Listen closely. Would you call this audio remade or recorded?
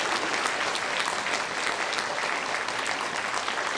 recorded